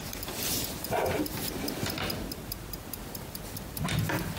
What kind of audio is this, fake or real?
real